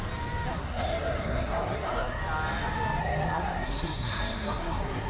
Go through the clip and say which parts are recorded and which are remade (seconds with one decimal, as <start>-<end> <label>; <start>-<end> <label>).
0.0-0.5 recorded; 0.5-2.2 remade; 2.2-3.0 recorded; 3.0-5.1 remade